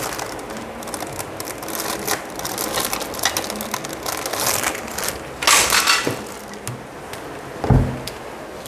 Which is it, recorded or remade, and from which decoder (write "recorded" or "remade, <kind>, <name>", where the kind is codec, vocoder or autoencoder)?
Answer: recorded